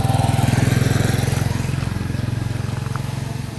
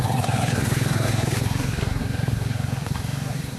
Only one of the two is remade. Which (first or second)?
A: second